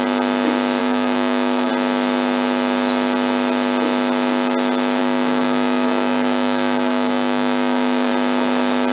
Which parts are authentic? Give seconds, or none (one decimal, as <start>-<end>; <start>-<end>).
0.0-0.8; 1.7-5.0; 8.1-8.9